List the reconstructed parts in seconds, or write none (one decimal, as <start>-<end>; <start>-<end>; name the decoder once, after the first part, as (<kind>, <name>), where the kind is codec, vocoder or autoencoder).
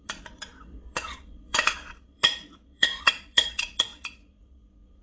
0.0-5.0 (vocoder, Vocos)